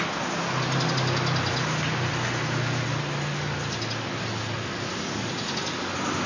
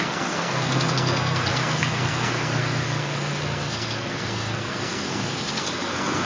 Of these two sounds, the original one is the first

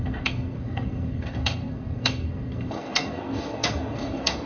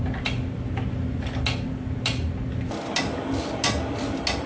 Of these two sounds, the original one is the second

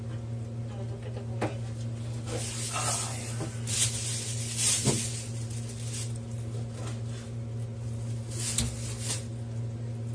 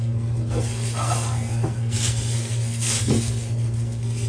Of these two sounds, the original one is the first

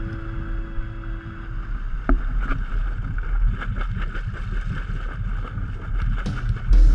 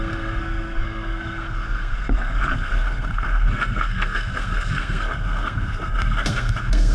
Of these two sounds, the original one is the first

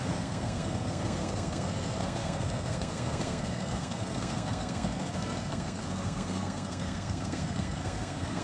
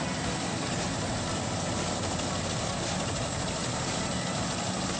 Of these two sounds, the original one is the second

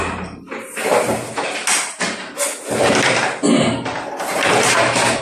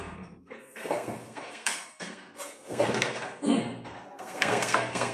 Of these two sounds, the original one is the first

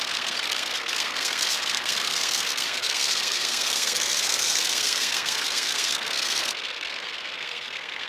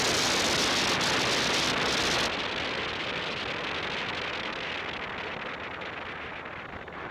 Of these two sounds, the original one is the second